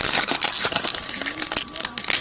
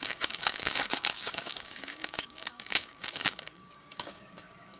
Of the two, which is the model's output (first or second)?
second